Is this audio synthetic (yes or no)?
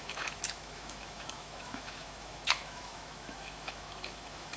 yes